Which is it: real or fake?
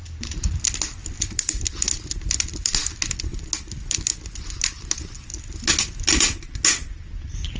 real